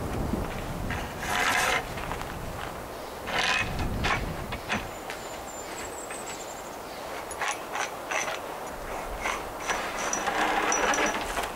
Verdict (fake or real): real